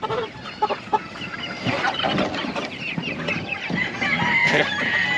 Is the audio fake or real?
fake